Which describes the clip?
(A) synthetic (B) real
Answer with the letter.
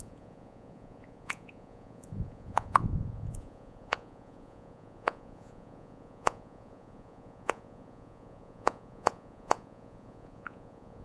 A